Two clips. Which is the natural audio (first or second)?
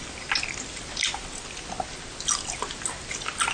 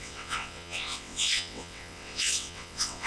first